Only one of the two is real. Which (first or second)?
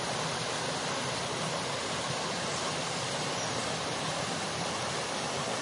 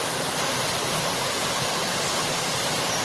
first